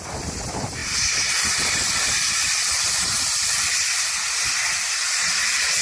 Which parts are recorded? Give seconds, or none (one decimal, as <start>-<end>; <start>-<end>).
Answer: none